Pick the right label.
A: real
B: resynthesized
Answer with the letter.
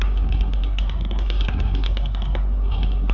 B